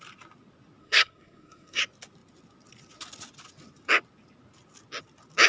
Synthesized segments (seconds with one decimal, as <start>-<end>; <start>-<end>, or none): 0.8-1.8